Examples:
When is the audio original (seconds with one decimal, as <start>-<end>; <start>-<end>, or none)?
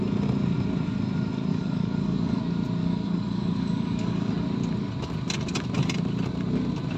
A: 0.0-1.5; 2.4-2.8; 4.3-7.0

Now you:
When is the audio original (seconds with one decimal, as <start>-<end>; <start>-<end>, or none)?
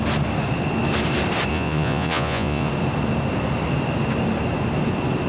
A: 0.0-1.5; 2.7-5.3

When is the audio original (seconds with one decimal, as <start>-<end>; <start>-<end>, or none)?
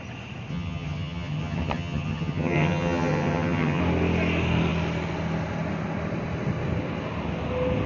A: 0.0-0.5; 3.8-7.9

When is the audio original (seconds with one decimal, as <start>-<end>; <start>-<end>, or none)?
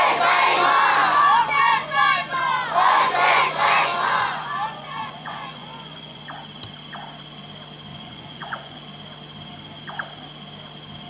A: 0.0-1.0; 6.2-7.9; 8.8-11.1